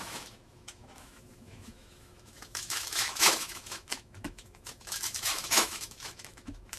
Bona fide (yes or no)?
no